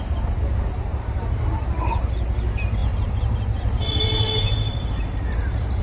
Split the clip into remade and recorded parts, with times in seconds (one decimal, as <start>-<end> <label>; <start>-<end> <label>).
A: 0.0-0.9 recorded; 0.9-1.6 remade; 1.6-2.8 recorded; 2.8-5.8 remade